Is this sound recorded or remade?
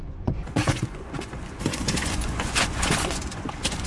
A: remade